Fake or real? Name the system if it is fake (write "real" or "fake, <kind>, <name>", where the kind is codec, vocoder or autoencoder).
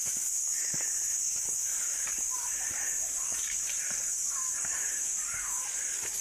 fake, codec, DAC